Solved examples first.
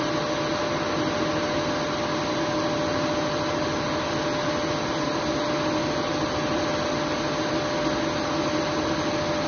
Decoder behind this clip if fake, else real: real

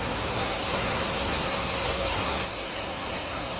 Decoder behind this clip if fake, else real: fake, codec, SNAC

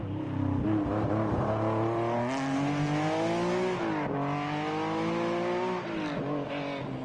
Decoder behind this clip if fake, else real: real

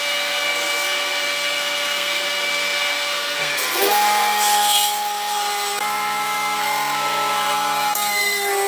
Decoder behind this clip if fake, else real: fake, codec, SNAC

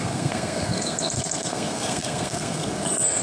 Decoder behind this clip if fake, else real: fake, codec, SNAC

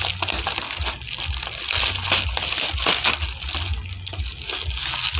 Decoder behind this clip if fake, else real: real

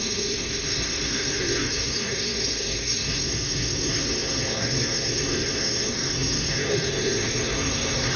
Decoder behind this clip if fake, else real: fake, codec, SNAC